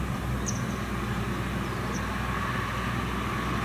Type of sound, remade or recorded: recorded